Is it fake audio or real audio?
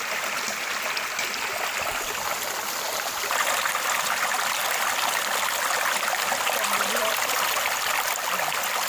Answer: real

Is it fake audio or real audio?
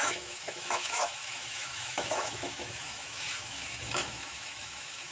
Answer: fake